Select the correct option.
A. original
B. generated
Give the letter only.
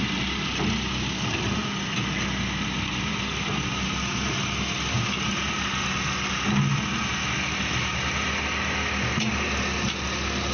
A